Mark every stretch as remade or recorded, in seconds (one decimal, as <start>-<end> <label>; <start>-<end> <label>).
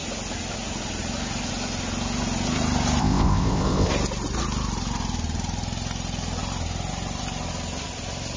0.0-3.0 recorded; 3.0-3.9 remade; 3.9-8.4 recorded